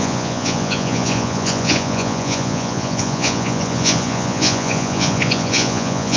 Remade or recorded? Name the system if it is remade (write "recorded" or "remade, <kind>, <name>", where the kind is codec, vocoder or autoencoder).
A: remade, vocoder, Vocos